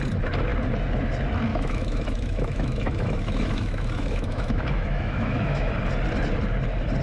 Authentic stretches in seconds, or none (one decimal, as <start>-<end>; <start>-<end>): 0.0-1.5; 5.7-7.0